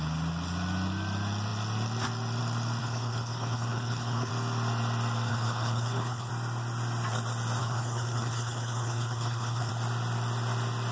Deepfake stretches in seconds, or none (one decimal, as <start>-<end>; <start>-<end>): 2.8-4.3; 5.3-6.3; 7.6-9.7